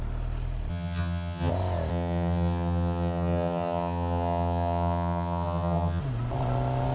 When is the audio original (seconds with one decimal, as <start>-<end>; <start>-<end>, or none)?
0.0-0.7; 1.5-1.9; 6.0-6.9